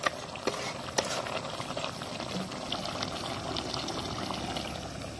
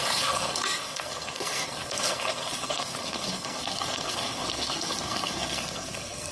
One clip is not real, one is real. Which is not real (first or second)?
second